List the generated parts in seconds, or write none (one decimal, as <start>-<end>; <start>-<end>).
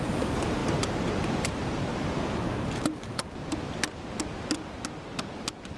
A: 0.0-1.9